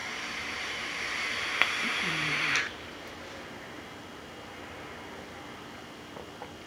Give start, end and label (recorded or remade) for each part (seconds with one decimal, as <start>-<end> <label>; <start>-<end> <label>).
0.0-3.2 remade; 3.2-6.7 recorded